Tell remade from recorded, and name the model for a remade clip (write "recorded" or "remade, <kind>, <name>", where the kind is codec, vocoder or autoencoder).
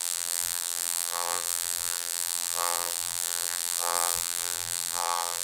remade, vocoder, BigVGAN v2